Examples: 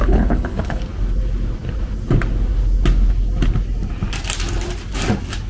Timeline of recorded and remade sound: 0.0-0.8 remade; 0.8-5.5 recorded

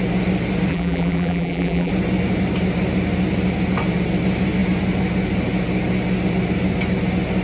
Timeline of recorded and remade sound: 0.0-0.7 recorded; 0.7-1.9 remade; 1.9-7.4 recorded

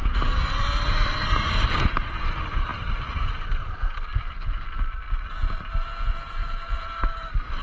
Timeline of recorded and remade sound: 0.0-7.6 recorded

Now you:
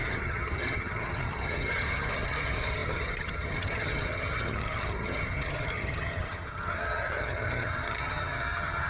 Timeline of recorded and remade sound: 0.0-8.9 remade